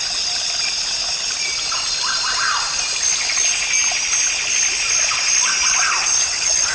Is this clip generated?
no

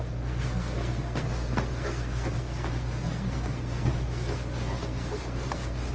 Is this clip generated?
yes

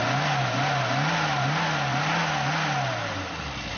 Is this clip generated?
no